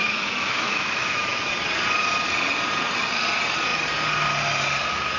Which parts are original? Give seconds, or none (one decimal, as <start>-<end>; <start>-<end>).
1.5-5.2